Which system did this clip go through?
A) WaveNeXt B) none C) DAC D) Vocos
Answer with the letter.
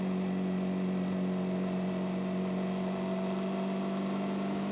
B